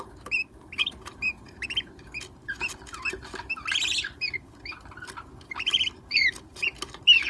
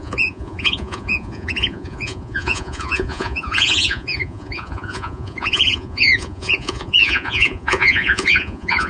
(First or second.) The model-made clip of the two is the second